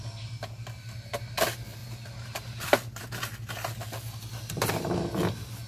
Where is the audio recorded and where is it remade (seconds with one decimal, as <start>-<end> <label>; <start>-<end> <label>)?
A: 0.0-5.7 recorded

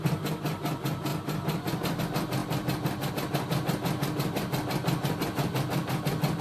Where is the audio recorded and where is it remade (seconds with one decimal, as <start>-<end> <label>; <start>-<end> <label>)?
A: 0.0-6.4 recorded

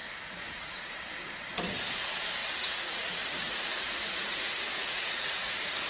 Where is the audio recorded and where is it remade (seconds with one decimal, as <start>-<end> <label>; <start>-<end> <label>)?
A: 0.0-0.9 remade; 0.9-2.4 recorded; 2.4-5.9 remade

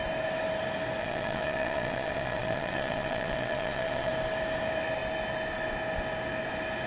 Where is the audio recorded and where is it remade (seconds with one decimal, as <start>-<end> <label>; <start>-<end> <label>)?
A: 0.0-1.0 recorded; 1.0-4.1 remade; 4.1-6.9 recorded

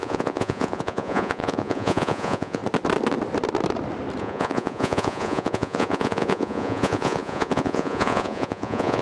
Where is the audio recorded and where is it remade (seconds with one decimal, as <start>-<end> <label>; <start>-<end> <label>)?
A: 0.0-2.6 remade; 2.6-4.2 recorded; 4.2-9.0 remade

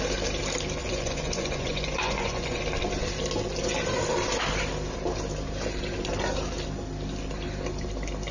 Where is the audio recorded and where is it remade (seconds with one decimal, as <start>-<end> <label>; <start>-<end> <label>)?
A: 0.0-0.8 recorded; 0.8-2.6 remade; 2.6-8.3 recorded

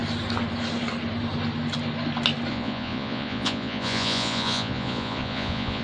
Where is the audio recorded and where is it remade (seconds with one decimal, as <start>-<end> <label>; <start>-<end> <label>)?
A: 0.0-2.5 recorded; 2.5-5.8 remade